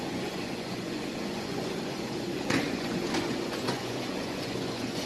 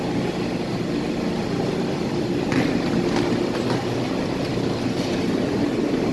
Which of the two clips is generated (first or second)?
first